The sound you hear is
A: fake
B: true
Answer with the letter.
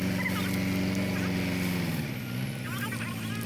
B